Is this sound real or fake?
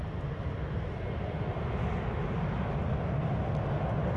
real